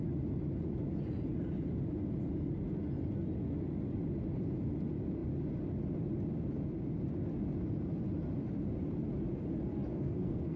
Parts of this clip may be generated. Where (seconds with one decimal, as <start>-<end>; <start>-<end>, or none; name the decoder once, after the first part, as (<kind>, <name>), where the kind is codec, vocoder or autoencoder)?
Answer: 9.9-10.6 (codec, SNAC)